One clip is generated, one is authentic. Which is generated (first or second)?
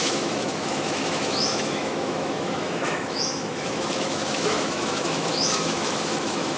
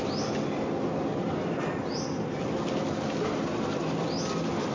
first